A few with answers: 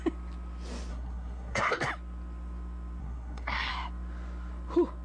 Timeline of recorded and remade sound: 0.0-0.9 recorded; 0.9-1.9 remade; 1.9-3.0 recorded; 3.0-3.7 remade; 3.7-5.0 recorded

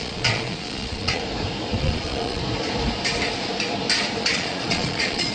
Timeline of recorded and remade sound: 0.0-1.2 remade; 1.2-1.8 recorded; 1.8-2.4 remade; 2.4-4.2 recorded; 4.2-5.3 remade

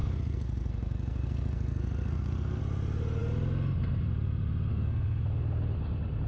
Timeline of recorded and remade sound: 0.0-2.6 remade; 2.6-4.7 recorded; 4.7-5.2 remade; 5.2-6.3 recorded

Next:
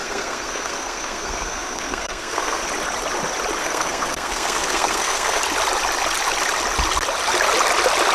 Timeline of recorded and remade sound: 0.0-2.6 remade; 2.6-3.6 recorded; 3.6-5.4 remade; 5.4-8.1 recorded

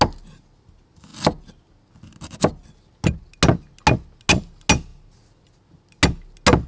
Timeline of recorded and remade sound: 0.0-6.7 recorded

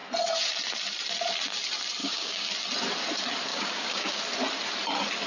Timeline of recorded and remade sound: 0.0-2.0 recorded; 2.0-2.5 remade; 2.5-3.5 recorded; 3.5-4.2 remade; 4.2-5.3 recorded